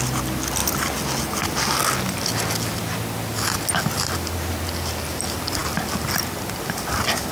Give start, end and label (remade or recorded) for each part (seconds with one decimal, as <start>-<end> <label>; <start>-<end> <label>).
0.0-7.3 recorded

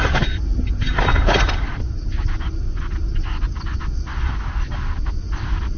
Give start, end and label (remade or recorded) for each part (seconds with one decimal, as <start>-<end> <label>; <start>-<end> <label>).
0.0-5.8 recorded